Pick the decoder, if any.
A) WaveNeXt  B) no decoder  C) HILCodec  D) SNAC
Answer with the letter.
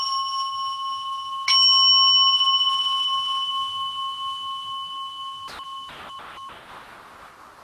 B